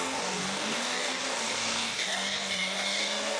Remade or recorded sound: remade